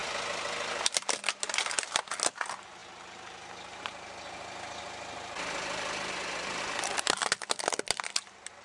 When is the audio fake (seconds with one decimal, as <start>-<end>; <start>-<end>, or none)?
none